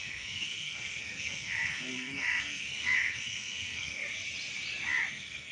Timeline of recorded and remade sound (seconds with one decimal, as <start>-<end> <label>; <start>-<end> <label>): 0.0-4.0 remade; 4.0-5.1 recorded; 5.1-5.5 remade